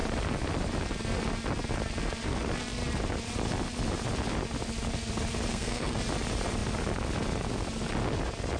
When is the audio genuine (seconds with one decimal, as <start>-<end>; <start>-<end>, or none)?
0.0-5.5; 6.0-8.6